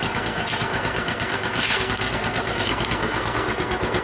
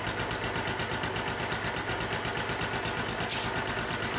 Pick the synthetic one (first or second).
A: first